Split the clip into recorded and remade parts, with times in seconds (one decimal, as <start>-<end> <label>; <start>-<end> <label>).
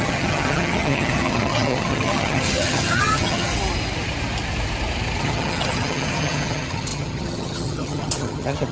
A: 0.0-3.5 remade; 3.5-5.2 recorded; 5.2-8.7 remade